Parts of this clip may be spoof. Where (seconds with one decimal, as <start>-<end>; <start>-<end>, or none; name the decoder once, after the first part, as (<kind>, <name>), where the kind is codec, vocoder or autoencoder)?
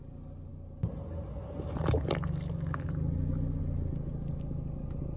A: none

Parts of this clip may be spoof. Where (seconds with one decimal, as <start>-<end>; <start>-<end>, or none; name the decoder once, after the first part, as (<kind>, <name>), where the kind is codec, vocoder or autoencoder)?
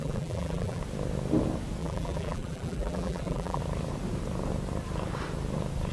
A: 0.0-0.8 (vocoder, BigVGAN v2); 1.8-3.6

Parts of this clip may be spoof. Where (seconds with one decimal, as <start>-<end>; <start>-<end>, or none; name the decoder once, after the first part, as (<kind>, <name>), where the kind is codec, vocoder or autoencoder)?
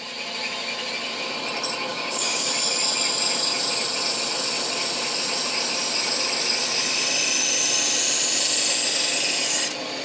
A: 1.9-2.5 (codec, DAC)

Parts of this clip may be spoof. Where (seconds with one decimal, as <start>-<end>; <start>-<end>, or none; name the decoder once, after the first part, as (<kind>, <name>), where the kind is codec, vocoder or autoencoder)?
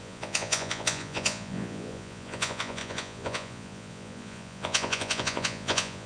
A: 0.0-6.1 (vocoder, Vocos)